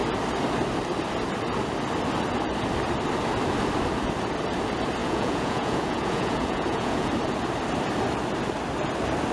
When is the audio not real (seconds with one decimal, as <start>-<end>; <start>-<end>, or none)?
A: 5.0-7.1